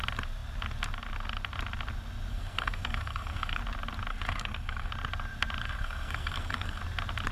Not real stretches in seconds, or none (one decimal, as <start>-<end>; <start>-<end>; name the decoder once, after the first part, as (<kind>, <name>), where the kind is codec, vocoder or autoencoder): 2.3-3.6 (codec, SNAC); 4.1-4.9; 5.6-6.8